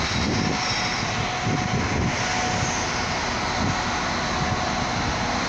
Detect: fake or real real